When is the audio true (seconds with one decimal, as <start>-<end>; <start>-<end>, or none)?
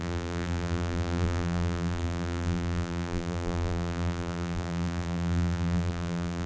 none